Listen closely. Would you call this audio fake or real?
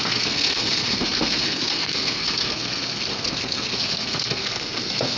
fake